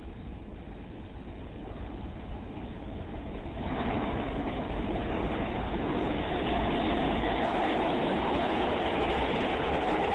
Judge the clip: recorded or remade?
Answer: remade